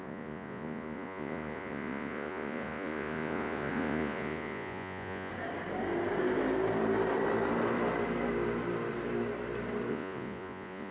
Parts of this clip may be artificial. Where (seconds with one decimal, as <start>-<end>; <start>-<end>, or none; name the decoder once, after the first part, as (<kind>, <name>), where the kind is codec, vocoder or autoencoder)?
0.0-5.3 (vocoder, Vocos); 9.9-10.9